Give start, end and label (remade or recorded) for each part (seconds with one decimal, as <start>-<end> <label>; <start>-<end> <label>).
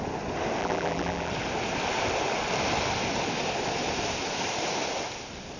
0.0-0.6 recorded; 0.6-1.3 remade; 1.3-5.6 recorded